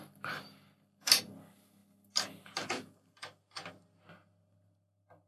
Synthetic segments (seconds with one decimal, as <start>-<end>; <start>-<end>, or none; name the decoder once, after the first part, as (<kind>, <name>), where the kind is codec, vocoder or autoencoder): none